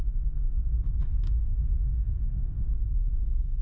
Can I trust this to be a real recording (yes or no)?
no